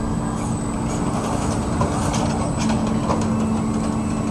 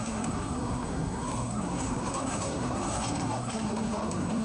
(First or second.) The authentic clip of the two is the first